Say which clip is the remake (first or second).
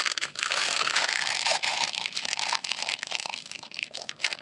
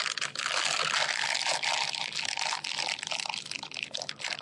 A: first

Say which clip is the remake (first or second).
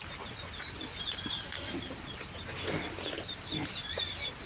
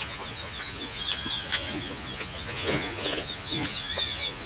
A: second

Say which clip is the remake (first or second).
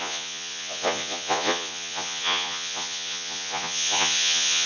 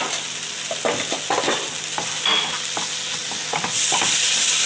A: first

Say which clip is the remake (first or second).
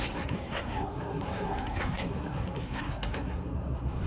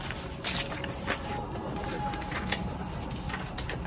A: first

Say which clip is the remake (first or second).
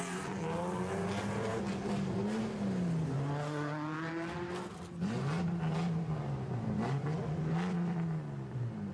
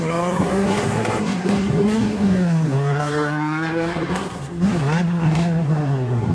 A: second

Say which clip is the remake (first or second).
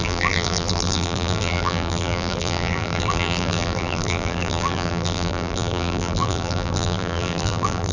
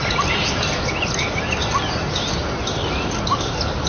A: first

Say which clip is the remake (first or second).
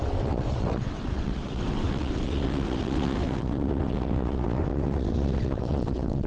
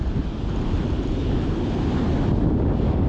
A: first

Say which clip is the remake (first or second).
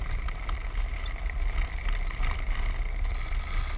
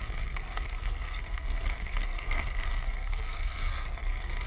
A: second